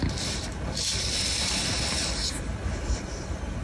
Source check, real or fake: real